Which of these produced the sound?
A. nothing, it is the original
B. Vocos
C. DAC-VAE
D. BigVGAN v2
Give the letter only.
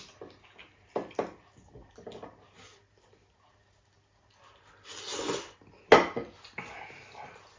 A